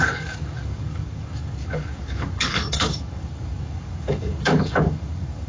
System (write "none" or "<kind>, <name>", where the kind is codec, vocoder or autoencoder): codec, DAC